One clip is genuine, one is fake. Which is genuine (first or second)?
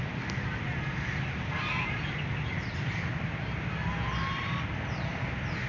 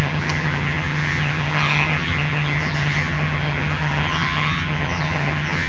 first